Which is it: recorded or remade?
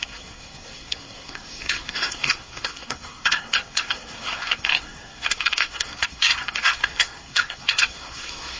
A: remade